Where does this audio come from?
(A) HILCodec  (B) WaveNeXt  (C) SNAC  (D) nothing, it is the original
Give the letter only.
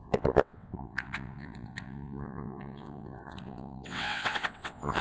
B